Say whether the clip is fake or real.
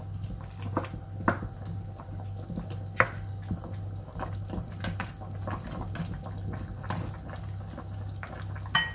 real